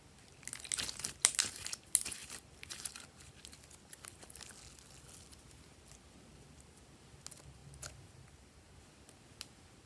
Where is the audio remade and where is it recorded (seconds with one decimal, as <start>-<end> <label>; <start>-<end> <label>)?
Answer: 0.0-9.9 recorded